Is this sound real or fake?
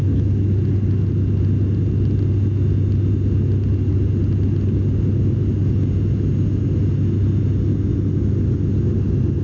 real